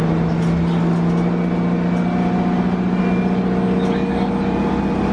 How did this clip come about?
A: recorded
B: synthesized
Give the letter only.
A